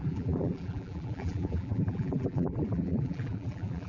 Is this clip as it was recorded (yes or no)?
no